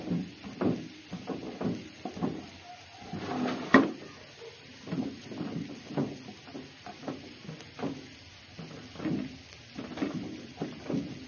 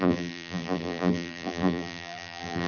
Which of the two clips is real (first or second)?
first